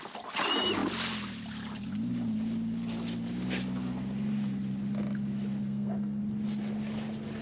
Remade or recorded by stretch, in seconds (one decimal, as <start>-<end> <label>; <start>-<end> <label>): 0.0-5.6 recorded; 5.6-6.2 remade; 6.2-7.4 recorded